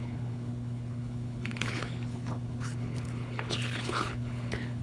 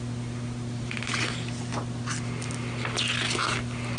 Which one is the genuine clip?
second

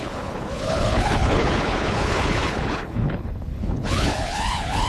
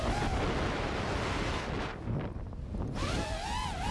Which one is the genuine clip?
second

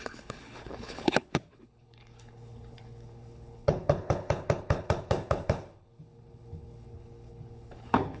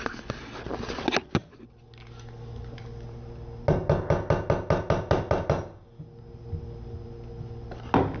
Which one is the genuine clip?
second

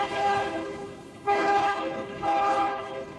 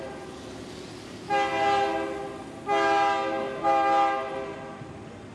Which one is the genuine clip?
second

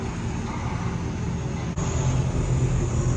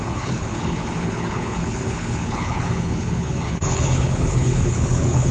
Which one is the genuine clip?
first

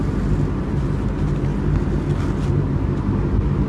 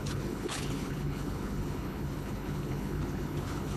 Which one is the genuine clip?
first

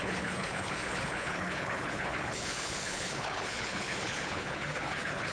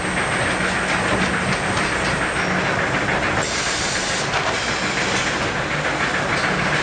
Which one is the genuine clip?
second